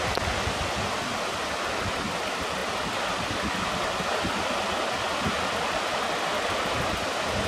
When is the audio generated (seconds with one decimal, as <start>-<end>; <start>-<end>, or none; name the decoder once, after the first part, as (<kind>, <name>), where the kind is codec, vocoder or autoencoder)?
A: none